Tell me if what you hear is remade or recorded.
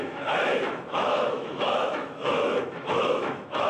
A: remade